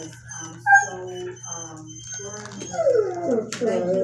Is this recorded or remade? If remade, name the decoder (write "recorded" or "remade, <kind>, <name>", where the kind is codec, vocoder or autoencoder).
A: recorded